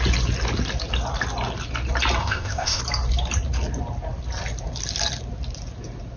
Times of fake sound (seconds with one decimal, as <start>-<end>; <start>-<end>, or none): 2.2-2.8